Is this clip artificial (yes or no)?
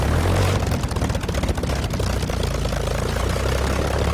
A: no